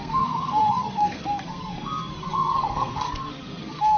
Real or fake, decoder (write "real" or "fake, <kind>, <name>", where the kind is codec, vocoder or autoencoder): fake, codec, SNAC